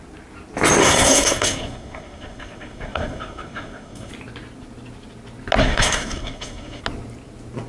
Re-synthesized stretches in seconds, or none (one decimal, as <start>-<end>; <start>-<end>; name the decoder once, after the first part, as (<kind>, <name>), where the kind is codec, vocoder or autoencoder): 0.8-4.1 (codec, SNAC); 5.6-6.8